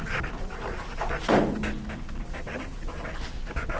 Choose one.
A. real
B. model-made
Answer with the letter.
A